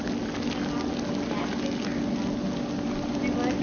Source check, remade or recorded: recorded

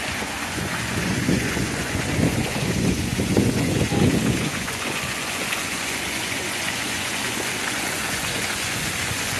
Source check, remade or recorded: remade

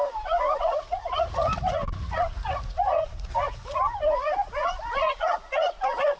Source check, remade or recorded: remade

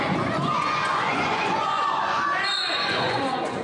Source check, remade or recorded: remade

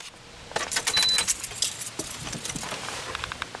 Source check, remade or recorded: recorded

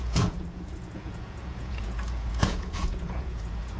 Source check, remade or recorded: remade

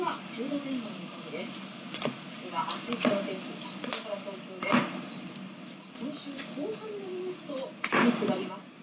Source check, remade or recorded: recorded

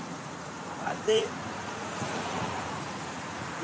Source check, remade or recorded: remade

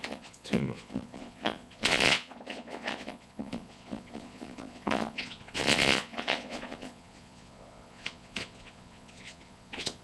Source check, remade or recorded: remade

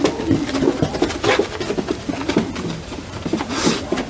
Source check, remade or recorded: recorded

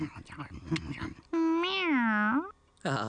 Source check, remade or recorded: recorded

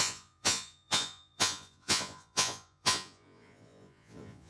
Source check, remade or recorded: remade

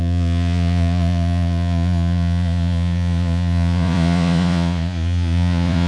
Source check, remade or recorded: remade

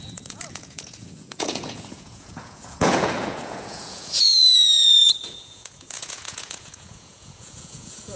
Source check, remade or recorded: remade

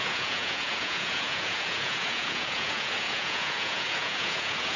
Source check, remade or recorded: remade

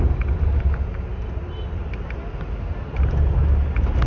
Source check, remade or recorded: recorded